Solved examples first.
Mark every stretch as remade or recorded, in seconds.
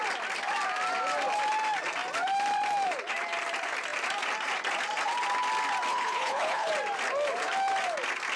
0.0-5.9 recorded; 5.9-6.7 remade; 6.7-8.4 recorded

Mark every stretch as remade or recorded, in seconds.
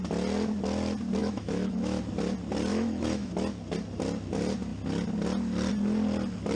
0.0-1.2 recorded; 1.2-2.0 remade; 2.0-2.7 recorded; 2.7-3.3 remade; 3.3-6.6 recorded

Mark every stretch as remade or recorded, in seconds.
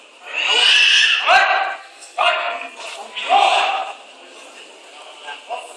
0.0-1.8 recorded; 1.8-2.8 remade; 2.8-5.8 recorded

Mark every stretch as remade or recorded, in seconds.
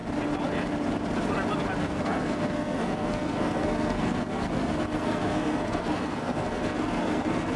0.0-1.8 recorded; 1.8-7.6 remade